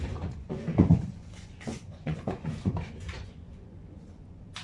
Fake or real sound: fake